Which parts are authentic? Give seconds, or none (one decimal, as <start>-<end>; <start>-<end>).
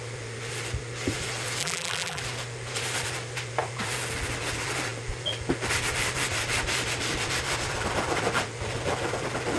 0.0-1.6; 2.2-9.6